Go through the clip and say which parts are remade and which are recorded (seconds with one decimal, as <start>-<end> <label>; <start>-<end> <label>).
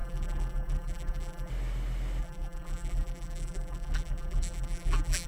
0.0-1.5 remade; 1.5-2.2 recorded; 2.2-5.3 remade